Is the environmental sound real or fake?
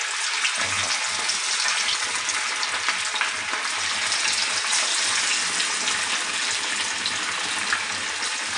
real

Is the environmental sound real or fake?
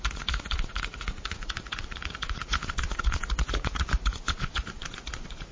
fake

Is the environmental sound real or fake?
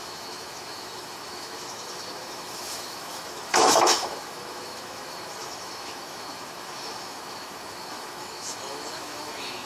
fake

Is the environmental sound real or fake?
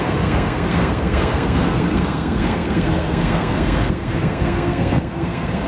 fake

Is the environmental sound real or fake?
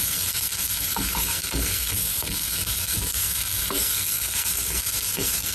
fake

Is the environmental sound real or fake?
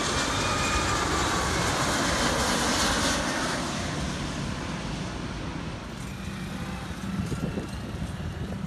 real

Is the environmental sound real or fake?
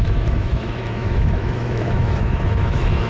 fake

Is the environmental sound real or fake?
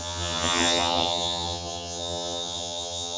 fake